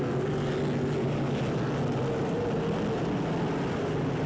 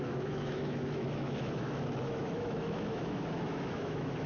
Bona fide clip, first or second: first